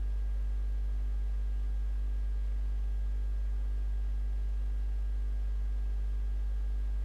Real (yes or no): yes